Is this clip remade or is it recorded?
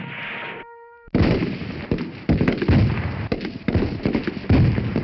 recorded